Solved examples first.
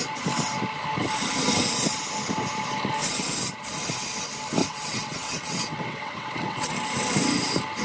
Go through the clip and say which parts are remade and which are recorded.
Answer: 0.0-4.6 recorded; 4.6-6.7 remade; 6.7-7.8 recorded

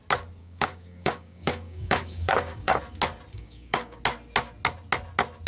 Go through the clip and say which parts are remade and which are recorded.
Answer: 0.0-0.4 recorded; 0.4-2.8 remade; 2.8-3.3 recorded; 3.3-4.0 remade; 4.0-5.5 recorded